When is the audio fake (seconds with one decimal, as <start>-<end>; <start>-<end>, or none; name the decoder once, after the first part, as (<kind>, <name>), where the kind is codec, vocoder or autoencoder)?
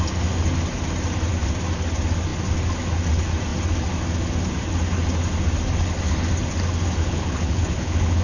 7.0-8.2 (codec, HILCodec)